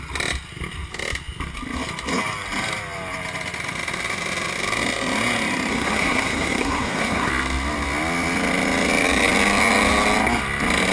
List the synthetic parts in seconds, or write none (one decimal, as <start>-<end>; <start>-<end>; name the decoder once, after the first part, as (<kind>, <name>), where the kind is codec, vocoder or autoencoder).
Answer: 5.7-7.3 (codec, SNAC)